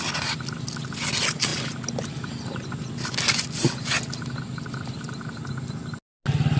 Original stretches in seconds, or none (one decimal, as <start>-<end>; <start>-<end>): 0.0-6.6